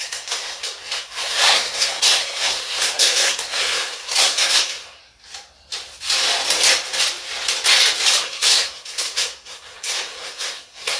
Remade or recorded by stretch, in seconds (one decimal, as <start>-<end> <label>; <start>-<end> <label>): 0.0-5.0 remade; 5.0-8.2 recorded; 8.2-11.0 remade